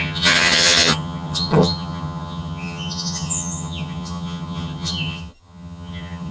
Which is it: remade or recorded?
remade